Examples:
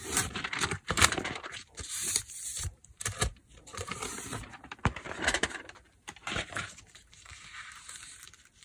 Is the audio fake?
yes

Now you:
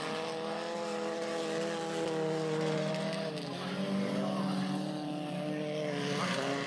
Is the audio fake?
no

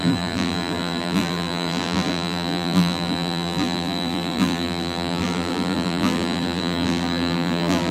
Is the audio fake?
yes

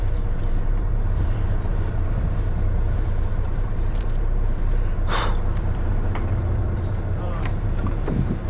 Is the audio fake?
yes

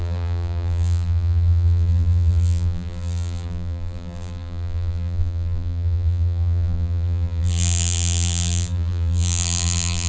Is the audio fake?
yes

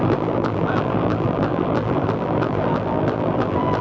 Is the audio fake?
yes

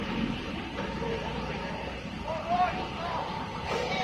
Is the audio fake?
yes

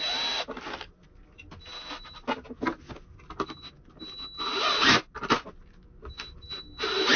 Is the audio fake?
no